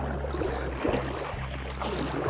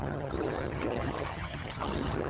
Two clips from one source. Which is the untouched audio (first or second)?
first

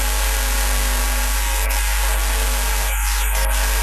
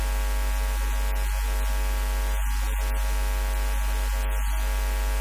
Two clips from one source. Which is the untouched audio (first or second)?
second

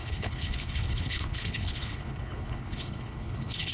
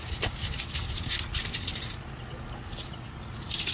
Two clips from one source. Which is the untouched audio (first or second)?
second